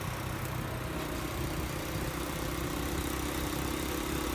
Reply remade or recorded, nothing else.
recorded